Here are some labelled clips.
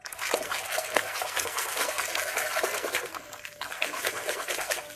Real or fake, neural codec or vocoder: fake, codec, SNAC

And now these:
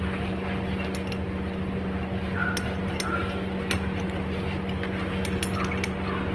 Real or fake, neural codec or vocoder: real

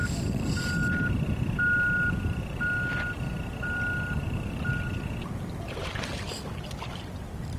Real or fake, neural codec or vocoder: real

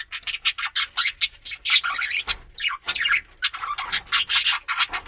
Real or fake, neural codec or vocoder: real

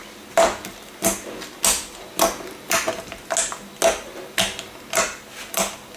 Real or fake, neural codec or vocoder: real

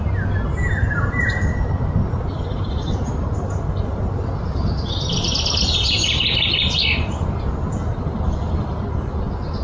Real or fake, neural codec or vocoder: real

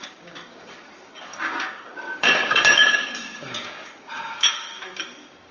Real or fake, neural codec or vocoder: fake, codec, DAC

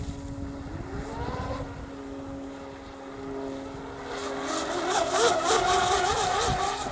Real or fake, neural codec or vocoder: real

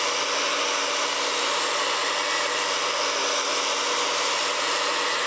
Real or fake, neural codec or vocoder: real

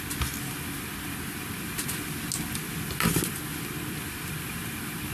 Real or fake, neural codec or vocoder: real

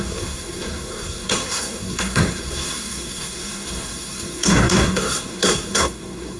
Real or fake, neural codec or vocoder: fake, codec, SNAC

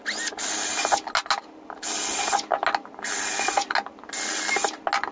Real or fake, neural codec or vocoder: real